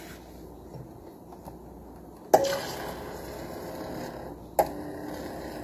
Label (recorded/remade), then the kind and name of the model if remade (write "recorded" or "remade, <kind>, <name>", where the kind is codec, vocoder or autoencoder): recorded